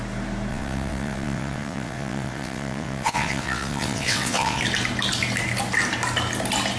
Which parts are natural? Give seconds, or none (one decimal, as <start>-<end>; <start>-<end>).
0.0-0.5; 4.6-6.8